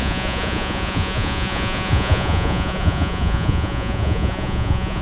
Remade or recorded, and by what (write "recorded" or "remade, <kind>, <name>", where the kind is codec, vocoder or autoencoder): remade, vocoder, Vocos